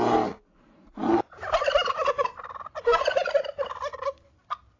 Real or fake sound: real